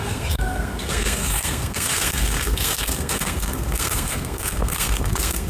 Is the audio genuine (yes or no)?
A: no